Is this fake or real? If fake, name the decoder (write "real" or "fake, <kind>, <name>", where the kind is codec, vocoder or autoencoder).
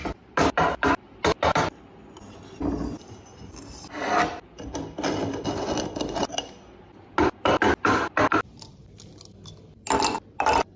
real